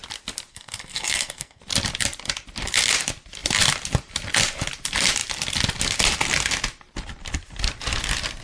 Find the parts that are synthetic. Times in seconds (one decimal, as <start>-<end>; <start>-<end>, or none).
0.5-1.6